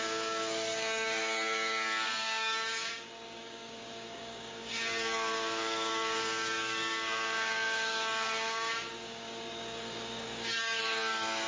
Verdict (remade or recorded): remade